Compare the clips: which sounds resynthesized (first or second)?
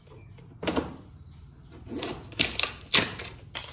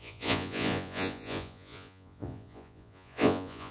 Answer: second